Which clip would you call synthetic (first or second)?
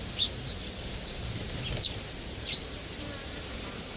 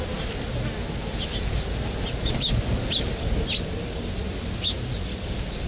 first